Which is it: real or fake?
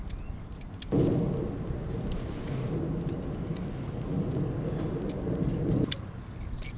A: real